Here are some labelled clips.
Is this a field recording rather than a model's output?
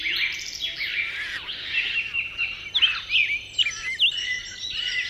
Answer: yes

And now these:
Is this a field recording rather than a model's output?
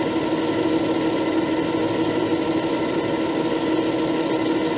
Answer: yes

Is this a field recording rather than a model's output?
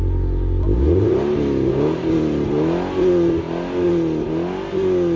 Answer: yes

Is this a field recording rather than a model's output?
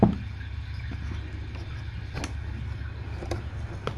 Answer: yes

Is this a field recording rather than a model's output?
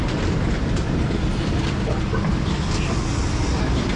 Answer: yes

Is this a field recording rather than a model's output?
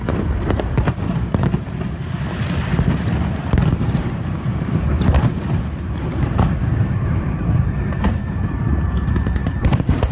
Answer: no